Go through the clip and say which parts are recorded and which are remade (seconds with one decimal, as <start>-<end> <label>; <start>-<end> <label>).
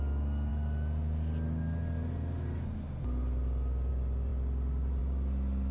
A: 0.0-5.7 recorded